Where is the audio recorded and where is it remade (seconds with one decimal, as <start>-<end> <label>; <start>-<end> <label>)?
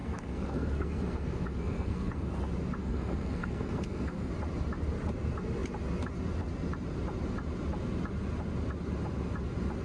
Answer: 0.0-2.4 remade; 2.4-2.8 recorded; 2.8-4.3 remade; 4.3-9.8 recorded